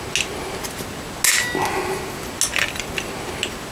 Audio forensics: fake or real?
real